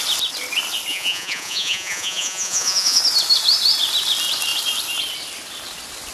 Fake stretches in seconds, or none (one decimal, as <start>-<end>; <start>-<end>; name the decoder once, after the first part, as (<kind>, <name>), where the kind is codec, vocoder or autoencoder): 0.9-3.0 (vocoder, Vocos)